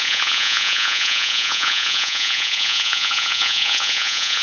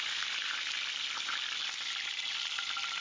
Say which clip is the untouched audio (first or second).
second